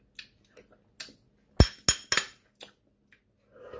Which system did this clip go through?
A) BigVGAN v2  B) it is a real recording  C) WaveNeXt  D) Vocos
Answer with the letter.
B